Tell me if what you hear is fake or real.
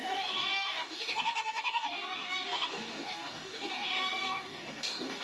fake